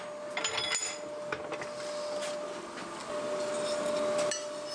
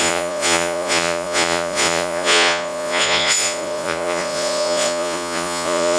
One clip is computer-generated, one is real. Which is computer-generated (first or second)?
second